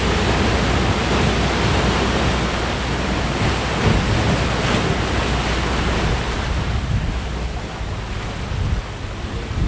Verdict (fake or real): real